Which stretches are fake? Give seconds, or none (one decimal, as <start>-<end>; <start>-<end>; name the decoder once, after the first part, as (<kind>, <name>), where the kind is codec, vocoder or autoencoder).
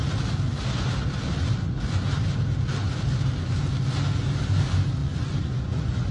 5.0-6.1 (vocoder, Vocos)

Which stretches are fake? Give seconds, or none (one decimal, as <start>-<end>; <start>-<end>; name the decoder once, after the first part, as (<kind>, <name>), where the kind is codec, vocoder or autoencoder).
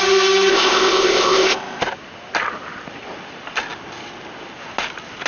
0.5-1.8 (codec, ZipCodec)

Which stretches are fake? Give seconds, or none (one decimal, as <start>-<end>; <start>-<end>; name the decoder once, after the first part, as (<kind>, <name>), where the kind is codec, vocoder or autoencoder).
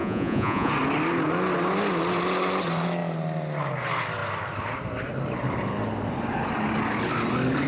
0.0-0.7 (vocoder, Vocos)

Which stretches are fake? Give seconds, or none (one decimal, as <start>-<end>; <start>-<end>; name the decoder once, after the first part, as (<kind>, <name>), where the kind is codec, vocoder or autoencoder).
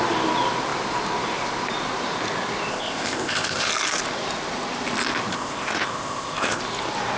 2.7-3.7 (codec, ZipCodec); 5.3-6.6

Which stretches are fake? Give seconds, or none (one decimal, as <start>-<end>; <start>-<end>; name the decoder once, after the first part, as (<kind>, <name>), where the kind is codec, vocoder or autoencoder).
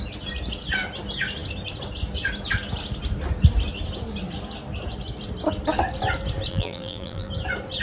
6.5-7.3 (vocoder, BigVGAN v2)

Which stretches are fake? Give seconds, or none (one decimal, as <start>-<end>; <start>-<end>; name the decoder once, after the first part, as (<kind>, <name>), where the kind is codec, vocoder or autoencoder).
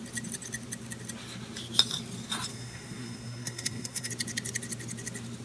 2.5-4.1 (codec, SNAC)